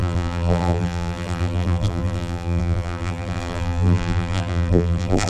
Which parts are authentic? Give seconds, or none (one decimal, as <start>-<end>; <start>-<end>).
none